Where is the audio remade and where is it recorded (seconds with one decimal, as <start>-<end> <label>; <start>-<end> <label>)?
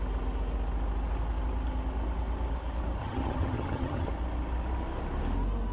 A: 0.0-3.0 recorded; 3.0-4.1 remade; 4.1-5.7 recorded